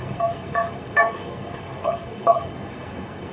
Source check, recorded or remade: remade